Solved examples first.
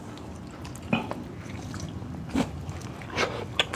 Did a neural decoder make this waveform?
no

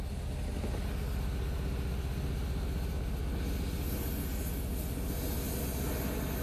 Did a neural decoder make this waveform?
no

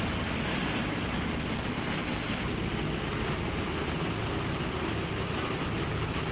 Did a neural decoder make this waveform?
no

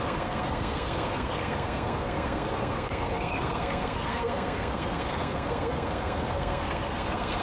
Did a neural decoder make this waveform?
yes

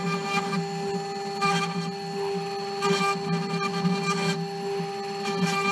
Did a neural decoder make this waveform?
no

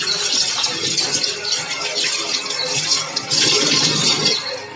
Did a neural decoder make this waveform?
no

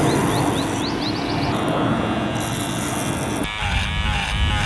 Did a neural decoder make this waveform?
no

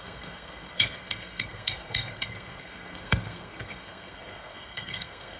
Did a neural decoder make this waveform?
yes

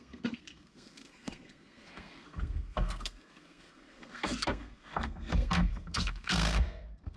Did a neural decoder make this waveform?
yes